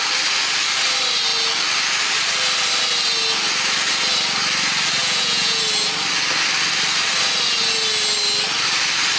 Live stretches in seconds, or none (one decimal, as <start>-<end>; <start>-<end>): 0.0-5.0; 5.6-9.2